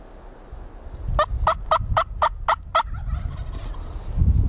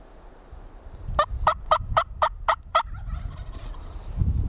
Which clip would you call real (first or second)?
first